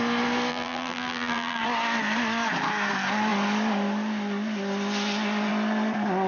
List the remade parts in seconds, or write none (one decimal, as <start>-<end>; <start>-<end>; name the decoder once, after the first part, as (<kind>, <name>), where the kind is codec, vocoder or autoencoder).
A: 0.5-1.6 (vocoder, BigVGAN v2)

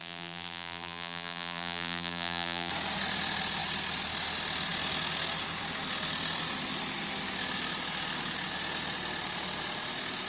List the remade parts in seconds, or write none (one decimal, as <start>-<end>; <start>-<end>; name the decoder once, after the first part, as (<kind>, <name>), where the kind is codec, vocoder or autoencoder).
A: 0.0-2.7 (vocoder, BigVGAN v2)

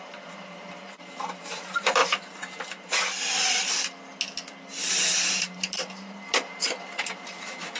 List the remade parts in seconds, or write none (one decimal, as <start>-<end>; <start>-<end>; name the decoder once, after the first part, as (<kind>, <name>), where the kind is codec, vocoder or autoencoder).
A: 0.0-2.0 (vocoder, BigVGAN v2); 4.9-7.8

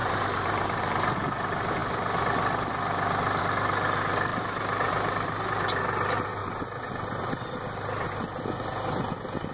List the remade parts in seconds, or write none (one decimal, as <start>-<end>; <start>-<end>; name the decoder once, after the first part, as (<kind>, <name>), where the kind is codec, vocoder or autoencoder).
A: 0.0-0.8 (vocoder, BigVGAN v2); 4.3-5.4; 6.4-7.3